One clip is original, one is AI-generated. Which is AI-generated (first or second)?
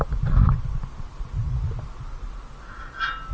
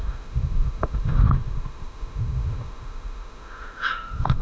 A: second